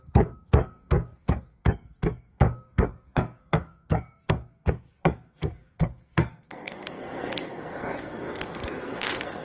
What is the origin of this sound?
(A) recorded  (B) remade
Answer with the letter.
B